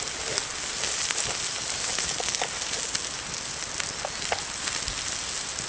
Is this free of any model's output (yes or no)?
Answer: yes